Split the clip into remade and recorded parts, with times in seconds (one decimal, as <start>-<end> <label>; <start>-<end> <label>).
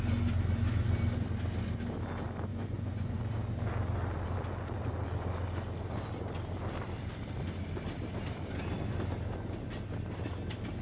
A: 0.0-2.5 recorded; 2.5-3.2 remade; 3.2-10.8 recorded